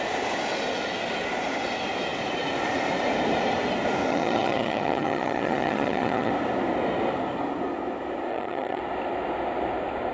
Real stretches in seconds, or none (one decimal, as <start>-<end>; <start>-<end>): 0.0-4.1; 6.3-8.3; 8.8-10.1